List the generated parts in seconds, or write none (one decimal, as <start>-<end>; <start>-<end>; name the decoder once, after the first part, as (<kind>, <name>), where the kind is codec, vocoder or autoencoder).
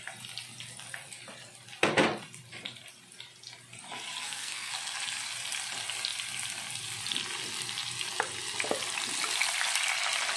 4.2-4.7 (codec, SNAC)